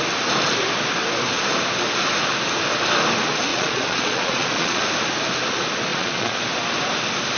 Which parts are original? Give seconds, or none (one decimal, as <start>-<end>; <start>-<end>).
0.0-3.5; 4.8-5.9; 6.4-7.4